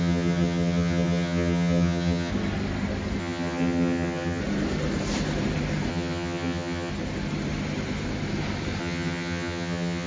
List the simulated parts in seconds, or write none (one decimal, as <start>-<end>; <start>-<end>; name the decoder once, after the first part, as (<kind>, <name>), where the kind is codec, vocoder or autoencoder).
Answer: 0.0-2.3 (vocoder, HiFi-GAN); 3.2-4.4; 5.9-6.9; 8.8-10.1